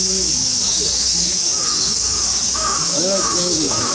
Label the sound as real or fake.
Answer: fake